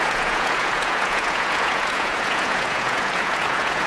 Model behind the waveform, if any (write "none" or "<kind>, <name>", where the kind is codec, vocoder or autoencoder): vocoder, Vocos